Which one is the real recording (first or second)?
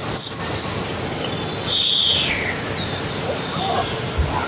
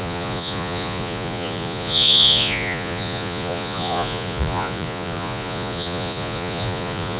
first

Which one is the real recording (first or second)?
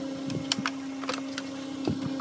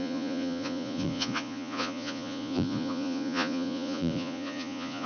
first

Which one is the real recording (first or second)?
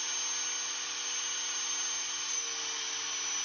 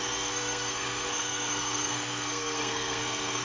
first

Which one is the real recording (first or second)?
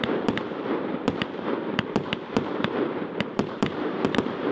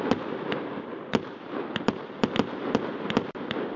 second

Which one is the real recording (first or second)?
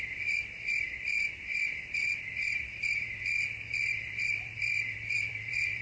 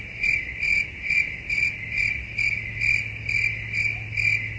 second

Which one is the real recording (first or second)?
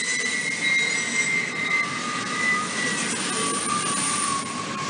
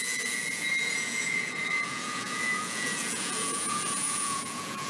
first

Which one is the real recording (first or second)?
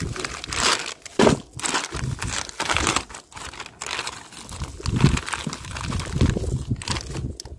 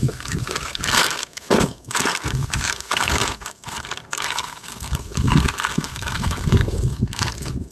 first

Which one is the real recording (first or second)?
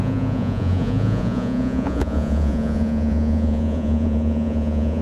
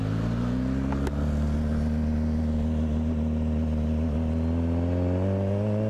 second